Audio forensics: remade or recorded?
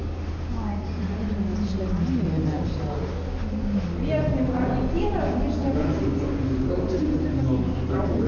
recorded